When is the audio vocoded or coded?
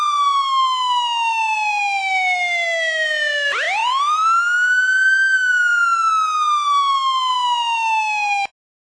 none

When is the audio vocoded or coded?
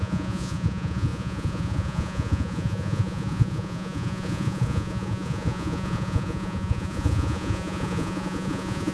0.0-8.9 (vocoder, Vocos)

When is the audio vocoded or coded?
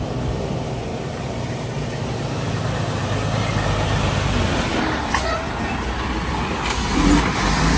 0.9-2.0 (vocoder, BigVGAN v2)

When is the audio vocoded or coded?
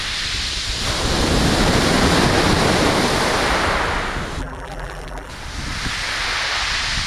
4.4-5.3 (vocoder, BigVGAN v2)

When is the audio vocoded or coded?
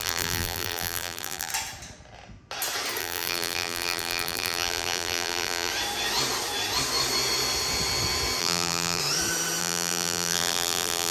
0.0-1.5 (vocoder, BigVGAN v2); 3.0-5.7; 8.4-9.0; 9.6-11.1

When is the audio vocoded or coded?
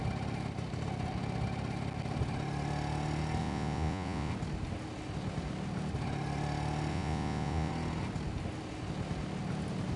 3.4-4.3 (vocoder, Vocos); 6.9-7.7